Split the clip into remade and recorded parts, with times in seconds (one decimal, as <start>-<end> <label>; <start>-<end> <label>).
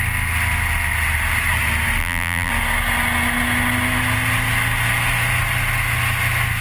0.0-2.0 recorded; 2.0-2.5 remade; 2.5-6.6 recorded